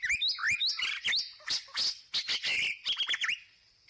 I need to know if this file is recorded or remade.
recorded